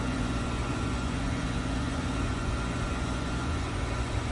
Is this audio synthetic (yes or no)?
yes